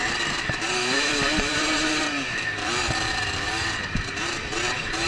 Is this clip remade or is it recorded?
remade